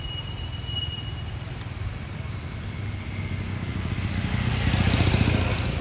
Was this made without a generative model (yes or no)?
yes